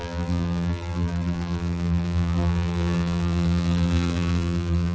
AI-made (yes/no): yes